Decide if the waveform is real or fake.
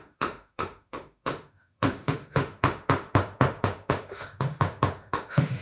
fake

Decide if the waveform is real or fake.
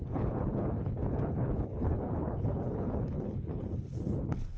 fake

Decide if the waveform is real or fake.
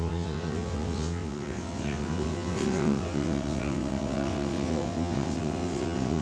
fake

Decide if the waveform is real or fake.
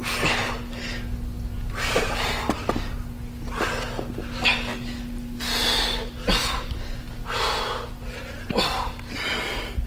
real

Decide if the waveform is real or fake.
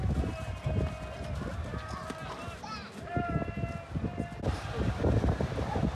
real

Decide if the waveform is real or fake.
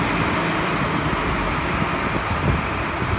real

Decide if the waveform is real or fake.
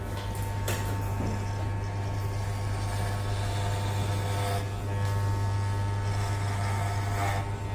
real